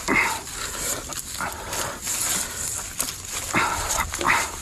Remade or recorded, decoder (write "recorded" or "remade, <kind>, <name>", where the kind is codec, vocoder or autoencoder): recorded